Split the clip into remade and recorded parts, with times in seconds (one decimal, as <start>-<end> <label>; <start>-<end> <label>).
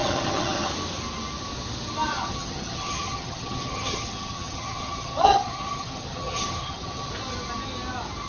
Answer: 0.0-0.7 remade; 0.7-2.1 recorded; 2.1-7.1 remade; 7.1-8.3 recorded